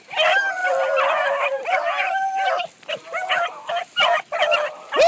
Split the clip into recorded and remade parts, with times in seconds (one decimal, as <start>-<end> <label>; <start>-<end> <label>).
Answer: 0.0-5.1 recorded